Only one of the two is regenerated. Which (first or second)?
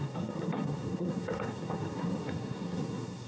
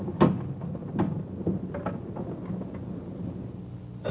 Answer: first